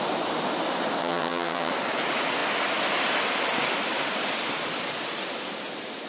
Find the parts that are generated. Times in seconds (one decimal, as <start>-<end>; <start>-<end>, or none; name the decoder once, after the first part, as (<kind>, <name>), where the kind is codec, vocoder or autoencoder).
1.0-1.7 (vocoder, HiFi-GAN)